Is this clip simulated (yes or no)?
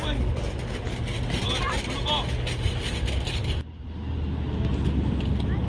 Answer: no